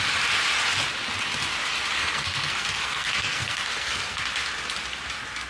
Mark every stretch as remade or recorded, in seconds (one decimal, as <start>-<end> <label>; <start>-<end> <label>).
0.0-2.0 recorded; 2.0-4.2 remade; 4.2-5.5 recorded